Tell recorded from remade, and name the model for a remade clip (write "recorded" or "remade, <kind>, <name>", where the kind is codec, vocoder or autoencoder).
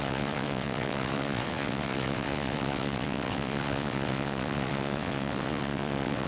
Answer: remade, vocoder, WaveNeXt